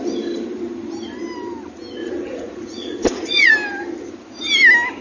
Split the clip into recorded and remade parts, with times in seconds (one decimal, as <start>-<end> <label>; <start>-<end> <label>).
0.0-2.0 recorded; 2.0-3.5 remade; 3.5-5.0 recorded